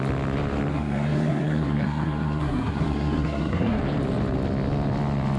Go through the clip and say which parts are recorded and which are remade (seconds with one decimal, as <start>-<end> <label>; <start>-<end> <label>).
0.0-0.7 recorded; 0.7-3.8 remade; 3.8-5.4 recorded